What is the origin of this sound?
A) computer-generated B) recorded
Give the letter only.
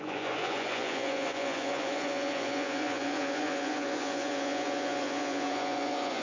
A